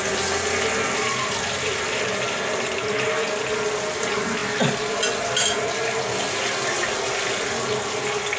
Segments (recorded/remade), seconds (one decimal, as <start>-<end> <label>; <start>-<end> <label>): 0.0-8.4 recorded